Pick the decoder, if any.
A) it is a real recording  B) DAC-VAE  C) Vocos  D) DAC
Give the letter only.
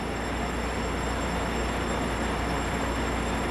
A